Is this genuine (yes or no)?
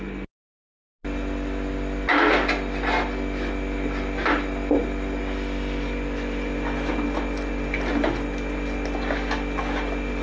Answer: yes